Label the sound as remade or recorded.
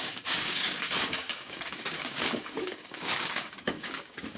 remade